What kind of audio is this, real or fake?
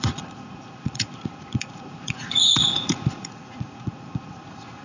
fake